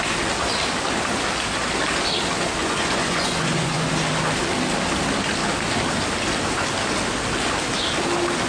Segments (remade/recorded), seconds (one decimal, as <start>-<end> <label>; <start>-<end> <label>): 0.0-2.6 recorded; 2.6-3.9 remade; 3.9-8.5 recorded